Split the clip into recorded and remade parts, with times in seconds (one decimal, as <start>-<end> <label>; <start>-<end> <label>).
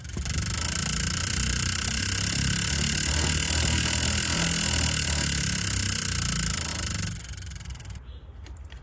0.0-8.8 recorded